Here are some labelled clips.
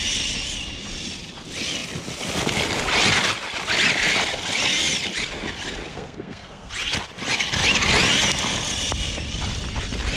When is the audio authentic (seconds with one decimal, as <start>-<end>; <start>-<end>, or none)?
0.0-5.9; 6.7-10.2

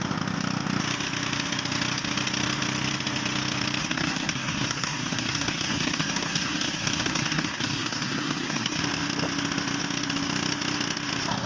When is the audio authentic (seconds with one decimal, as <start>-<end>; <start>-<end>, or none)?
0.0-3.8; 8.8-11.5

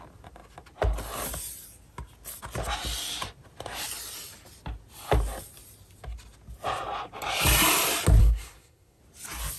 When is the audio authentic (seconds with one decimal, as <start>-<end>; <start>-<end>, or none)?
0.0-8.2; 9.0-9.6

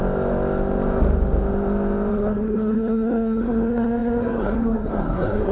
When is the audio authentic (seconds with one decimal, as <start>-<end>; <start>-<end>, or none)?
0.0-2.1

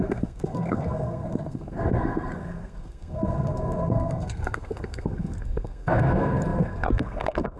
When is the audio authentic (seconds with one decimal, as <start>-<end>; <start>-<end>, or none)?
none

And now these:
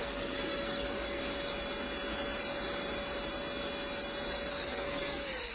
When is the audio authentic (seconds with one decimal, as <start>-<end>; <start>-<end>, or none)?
1.2-4.5